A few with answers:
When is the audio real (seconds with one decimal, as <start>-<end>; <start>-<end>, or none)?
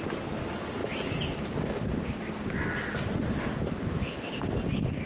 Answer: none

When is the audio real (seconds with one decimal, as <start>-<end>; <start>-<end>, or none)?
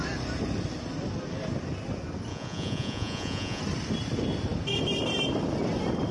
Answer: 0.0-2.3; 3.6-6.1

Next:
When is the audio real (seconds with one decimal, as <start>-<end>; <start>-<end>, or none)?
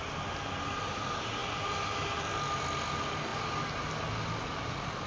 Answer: 0.0-5.1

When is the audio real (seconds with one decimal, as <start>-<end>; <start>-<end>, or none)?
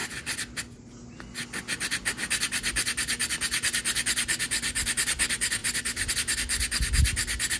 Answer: 0.6-5.6; 6.1-7.6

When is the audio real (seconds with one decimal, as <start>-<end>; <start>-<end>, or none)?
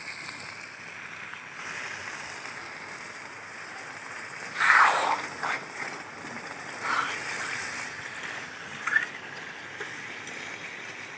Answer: 0.0-3.3; 6.7-11.2